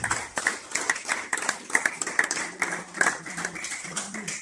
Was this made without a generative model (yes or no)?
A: no